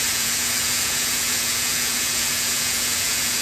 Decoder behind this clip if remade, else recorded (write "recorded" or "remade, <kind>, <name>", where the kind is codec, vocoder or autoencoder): remade, vocoder, Vocos